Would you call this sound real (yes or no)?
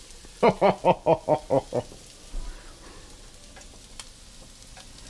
yes